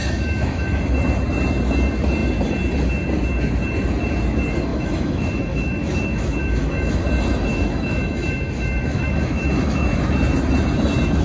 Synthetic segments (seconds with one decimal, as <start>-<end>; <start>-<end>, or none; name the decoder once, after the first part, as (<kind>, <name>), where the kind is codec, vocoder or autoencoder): 0.0-0.8 (autoencoder, DAC-VAE); 4.7-7.0; 7.5-10.0